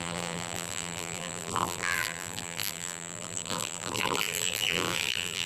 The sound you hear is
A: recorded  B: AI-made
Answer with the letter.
B